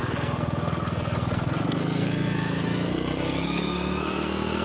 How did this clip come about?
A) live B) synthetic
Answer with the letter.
B